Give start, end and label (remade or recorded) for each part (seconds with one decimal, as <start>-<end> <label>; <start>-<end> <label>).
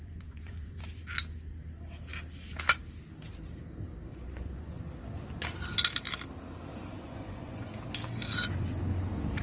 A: 0.0-0.8 remade; 0.8-4.1 recorded; 4.1-4.8 remade; 4.8-6.7 recorded; 6.7-7.7 remade; 7.7-9.4 recorded